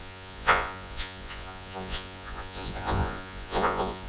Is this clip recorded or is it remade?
remade